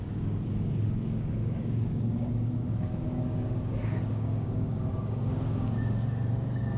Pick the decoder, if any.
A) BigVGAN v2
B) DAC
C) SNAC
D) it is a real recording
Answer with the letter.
B